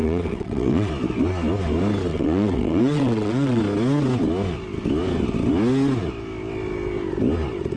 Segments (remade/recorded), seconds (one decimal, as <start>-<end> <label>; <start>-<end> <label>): 0.0-0.9 remade; 0.9-2.1 recorded; 2.1-3.6 remade; 3.6-7.8 recorded